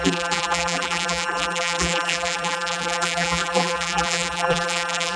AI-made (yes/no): yes